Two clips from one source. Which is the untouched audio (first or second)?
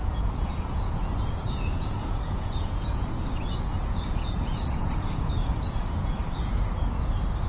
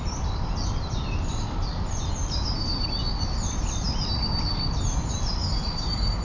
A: second